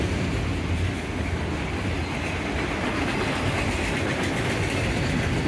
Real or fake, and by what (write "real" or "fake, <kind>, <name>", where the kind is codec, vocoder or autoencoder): real